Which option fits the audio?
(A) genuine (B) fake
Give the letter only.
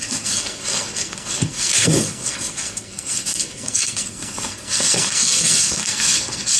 B